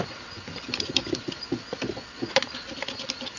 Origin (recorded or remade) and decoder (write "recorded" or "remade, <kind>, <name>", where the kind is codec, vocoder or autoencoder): recorded